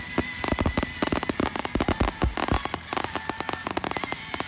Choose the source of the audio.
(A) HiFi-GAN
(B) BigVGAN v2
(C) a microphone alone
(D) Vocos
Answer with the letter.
C